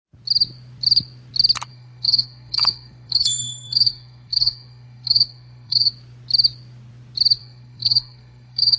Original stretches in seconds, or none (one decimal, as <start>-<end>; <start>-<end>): 0.0-1.7; 5.9-7.4